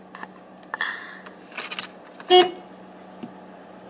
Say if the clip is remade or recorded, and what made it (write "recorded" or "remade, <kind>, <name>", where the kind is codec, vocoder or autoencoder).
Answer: recorded